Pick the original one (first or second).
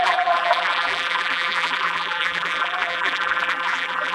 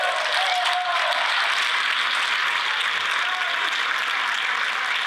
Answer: second